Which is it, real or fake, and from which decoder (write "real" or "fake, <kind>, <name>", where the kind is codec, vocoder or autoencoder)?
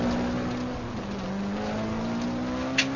real